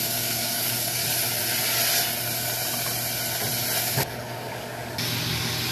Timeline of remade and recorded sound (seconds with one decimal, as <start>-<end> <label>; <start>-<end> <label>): 0.0-1.0 remade; 1.0-3.8 recorded; 3.8-5.7 remade